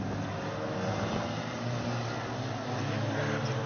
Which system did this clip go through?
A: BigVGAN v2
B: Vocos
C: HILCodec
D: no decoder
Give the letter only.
D